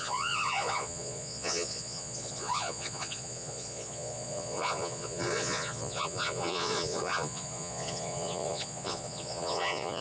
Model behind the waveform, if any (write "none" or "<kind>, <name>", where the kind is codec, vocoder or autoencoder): vocoder, Vocos